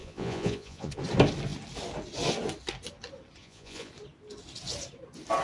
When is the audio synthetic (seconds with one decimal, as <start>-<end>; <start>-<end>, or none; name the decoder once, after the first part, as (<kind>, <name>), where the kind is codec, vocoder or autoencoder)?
0.0-1.0 (vocoder, Vocos); 3.4-3.9